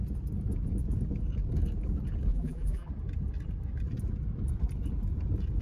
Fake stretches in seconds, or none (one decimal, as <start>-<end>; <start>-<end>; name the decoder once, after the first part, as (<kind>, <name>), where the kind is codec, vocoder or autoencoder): 2.3-2.9 (vocoder, BigVGAN v2)